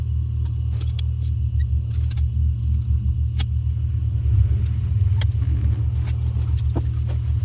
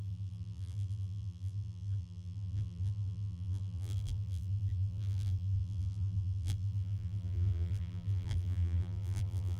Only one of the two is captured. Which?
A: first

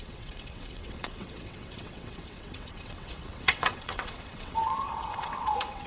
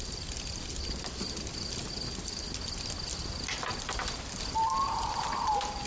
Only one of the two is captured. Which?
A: second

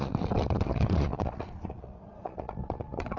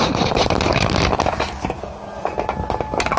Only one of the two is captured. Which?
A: second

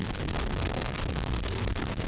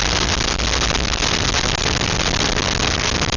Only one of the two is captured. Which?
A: second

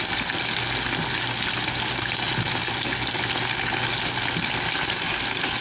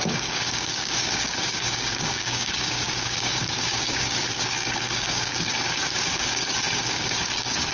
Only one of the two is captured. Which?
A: first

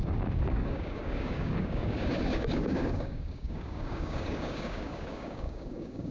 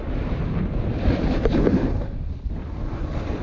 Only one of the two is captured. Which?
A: second